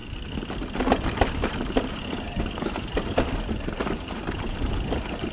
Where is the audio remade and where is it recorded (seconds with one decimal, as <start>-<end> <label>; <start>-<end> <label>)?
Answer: 0.0-5.3 recorded